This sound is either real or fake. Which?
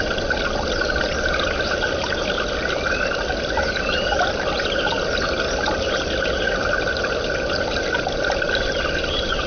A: real